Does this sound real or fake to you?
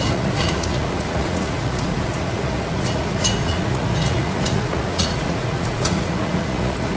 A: fake